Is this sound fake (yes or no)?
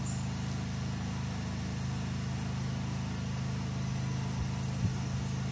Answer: no